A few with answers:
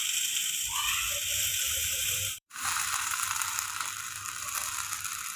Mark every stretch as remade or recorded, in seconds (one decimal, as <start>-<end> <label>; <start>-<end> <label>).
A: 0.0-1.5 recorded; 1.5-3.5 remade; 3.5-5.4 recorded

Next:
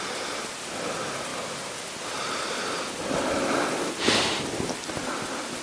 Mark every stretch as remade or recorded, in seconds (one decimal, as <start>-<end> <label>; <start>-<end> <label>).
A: 0.0-5.6 recorded

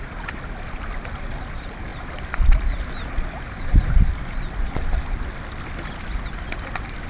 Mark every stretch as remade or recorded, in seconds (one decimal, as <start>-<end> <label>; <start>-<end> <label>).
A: 0.0-7.1 recorded